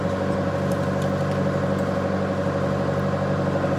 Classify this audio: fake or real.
real